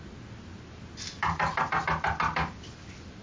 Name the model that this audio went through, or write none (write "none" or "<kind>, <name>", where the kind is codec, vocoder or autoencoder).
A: none